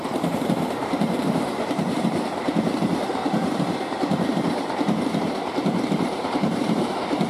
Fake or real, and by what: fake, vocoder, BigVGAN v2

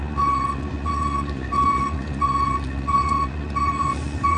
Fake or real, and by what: fake, vocoder, Vocos